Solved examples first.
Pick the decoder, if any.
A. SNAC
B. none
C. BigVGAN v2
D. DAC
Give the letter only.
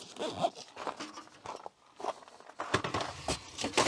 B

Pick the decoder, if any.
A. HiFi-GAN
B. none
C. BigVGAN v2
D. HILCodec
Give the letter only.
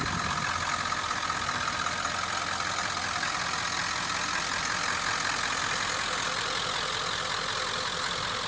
B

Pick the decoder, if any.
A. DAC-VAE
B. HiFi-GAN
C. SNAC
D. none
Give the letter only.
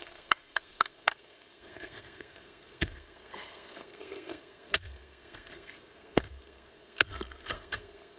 C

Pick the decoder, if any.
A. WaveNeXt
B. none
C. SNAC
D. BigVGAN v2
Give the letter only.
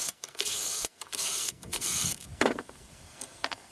C